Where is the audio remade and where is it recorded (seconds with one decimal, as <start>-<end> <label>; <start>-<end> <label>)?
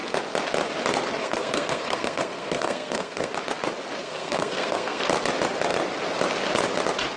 0.0-1.2 recorded; 1.2-3.3 remade; 3.3-4.0 recorded; 4.0-5.0 remade; 5.0-7.2 recorded